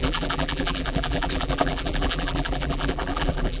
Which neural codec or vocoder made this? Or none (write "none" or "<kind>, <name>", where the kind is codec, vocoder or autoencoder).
vocoder, BigVGAN v2